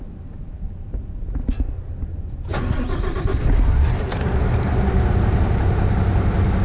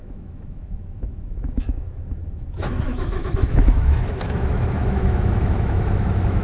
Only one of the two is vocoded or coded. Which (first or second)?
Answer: second